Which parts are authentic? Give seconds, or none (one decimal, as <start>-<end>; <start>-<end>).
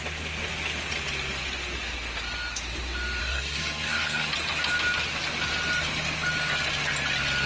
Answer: 0.0-3.2; 4.3-7.5